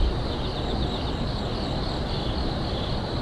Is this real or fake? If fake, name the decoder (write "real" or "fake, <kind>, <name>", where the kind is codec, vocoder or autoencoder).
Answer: real